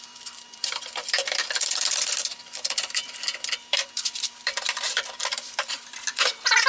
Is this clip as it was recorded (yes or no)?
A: no